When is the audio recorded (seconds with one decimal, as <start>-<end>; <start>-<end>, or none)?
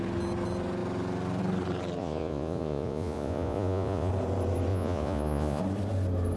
0.0-2.0; 4.1-4.7; 5.6-6.4